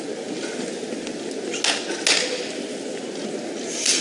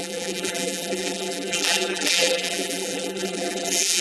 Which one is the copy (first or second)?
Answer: second